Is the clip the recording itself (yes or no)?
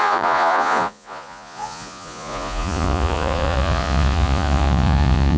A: no